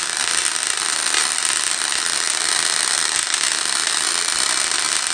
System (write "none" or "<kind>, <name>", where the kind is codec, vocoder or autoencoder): none